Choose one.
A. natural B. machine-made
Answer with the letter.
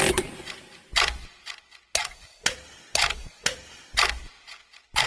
A